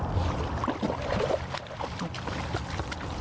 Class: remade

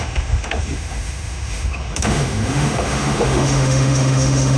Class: remade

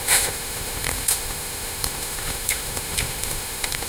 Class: remade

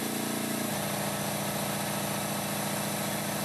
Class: recorded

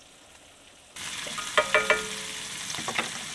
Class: recorded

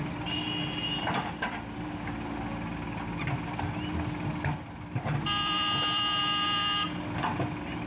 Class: remade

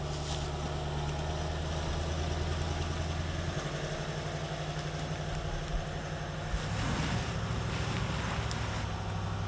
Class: recorded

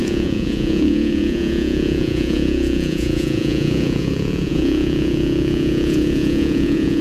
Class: remade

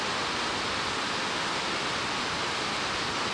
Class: recorded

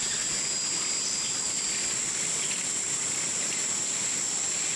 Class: recorded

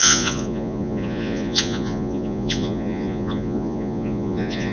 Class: remade